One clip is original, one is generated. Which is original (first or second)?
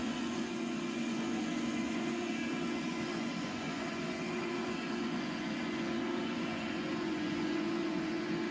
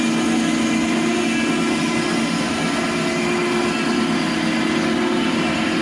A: second